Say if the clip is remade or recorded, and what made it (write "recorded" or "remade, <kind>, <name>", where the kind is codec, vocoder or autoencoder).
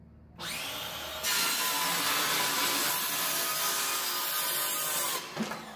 recorded